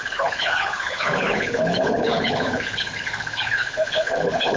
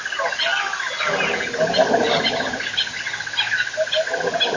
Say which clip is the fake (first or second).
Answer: first